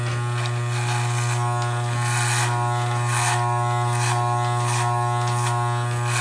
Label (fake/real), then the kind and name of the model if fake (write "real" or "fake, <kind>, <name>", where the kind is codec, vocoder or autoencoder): real